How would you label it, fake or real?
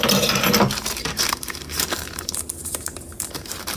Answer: fake